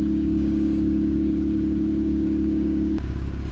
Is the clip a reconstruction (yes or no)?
yes